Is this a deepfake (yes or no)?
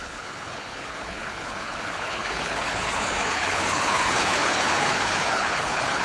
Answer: yes